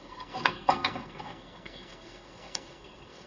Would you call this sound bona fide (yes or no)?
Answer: no